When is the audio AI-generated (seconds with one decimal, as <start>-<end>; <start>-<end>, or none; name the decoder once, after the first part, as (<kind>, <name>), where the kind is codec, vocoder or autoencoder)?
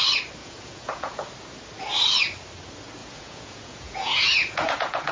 0.4-1.3 (vocoder, Vocos); 3.0-5.1